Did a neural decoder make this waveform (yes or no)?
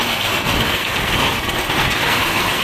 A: yes